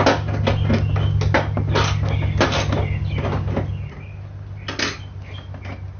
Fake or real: real